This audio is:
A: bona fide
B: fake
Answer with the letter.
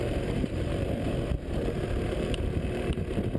B